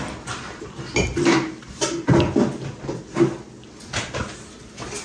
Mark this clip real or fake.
real